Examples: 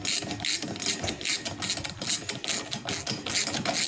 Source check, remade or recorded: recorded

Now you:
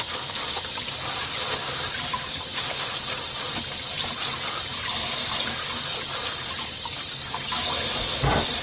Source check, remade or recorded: remade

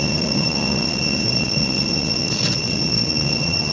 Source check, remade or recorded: remade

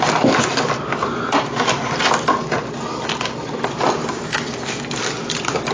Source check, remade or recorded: recorded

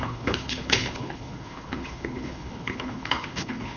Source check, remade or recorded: remade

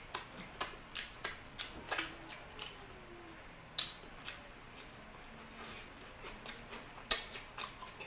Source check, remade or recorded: recorded